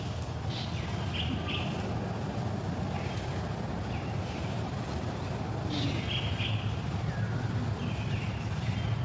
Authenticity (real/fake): real